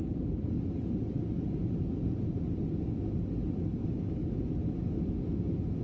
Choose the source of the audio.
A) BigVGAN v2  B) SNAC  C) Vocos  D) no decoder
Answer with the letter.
D